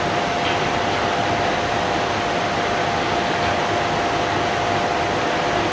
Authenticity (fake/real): real